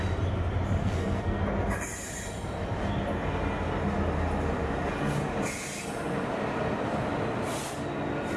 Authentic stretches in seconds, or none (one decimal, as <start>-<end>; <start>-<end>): 0.0-0.8; 1.4-8.4